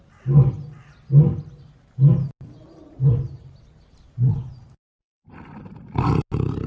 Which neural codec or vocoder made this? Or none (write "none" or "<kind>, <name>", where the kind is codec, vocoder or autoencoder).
none